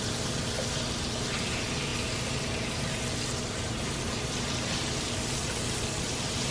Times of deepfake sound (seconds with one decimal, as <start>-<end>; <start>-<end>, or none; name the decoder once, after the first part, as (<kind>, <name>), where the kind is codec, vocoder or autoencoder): none